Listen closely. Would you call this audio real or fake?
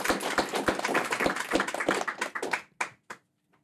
real